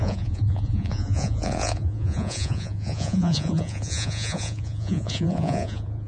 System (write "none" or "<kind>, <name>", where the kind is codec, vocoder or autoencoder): vocoder, Vocos